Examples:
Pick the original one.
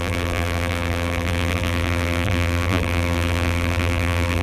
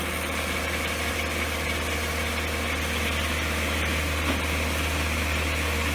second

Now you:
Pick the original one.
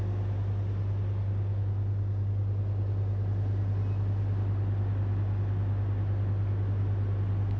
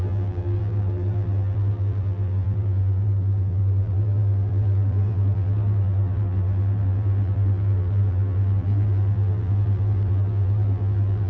first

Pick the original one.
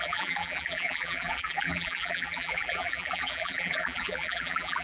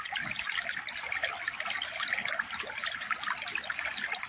second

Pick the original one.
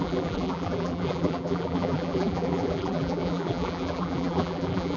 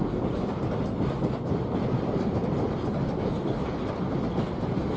second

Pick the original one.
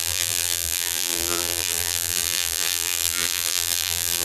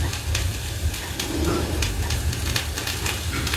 second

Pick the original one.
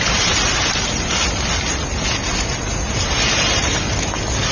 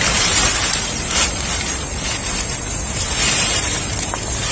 first